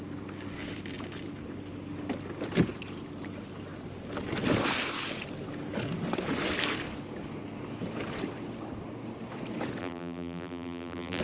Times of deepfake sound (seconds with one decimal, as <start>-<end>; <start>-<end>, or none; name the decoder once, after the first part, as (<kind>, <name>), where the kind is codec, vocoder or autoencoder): 9.8-11.2 (vocoder, BigVGAN v2)

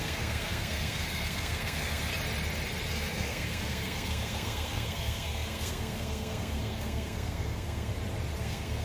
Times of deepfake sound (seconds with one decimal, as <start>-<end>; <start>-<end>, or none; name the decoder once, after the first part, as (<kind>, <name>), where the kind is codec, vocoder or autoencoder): 0.0-2.1 (codec, SNAC); 2.9-7.9; 8.4-8.8

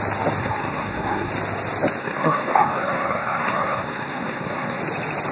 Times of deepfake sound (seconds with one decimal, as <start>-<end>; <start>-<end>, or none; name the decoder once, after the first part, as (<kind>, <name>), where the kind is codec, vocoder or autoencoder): 0.4-1.3 (codec, SNAC); 2.0-4.8

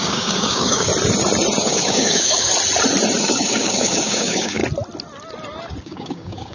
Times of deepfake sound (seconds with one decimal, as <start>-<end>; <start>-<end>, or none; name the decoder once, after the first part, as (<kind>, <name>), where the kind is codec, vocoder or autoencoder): 0.0-0.9 (codec, DAC); 1.6-2.5; 3.2-4.6; 5.8-6.5

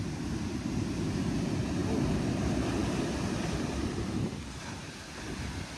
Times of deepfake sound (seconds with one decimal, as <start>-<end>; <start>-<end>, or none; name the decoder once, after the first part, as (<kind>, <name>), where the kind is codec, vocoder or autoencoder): none